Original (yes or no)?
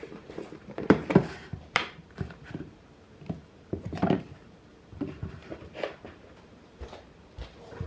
no